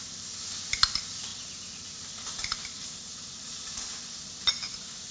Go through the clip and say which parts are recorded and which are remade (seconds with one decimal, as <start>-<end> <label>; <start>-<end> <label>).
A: 0.0-1.3 recorded; 1.3-4.0 remade; 4.0-5.1 recorded